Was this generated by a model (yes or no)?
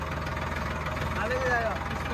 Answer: no